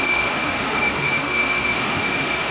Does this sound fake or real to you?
fake